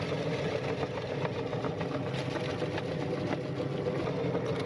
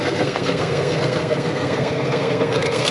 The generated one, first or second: second